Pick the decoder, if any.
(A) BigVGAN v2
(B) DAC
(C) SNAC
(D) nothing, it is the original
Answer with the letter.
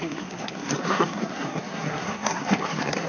C